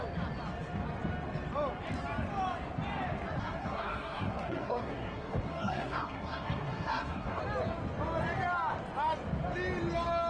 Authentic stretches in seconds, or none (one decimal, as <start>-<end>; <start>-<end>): 0.0-3.4; 7.4-10.3

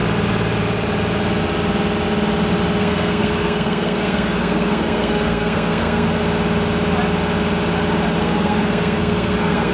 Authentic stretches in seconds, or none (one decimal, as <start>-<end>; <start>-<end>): 0.0-2.8; 6.2-8.2